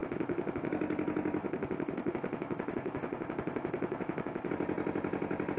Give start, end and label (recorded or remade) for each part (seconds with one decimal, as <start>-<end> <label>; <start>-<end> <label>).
0.0-0.7 remade; 0.7-1.4 recorded; 1.4-4.5 remade; 4.5-5.6 recorded